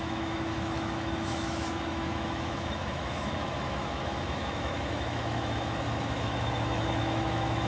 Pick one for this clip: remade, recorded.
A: remade